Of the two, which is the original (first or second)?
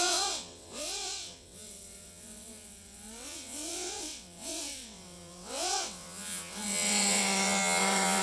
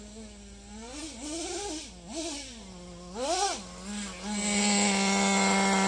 second